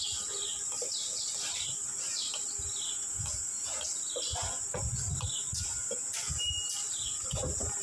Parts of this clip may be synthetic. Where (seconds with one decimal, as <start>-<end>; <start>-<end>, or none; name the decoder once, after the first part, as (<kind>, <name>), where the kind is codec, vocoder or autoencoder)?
none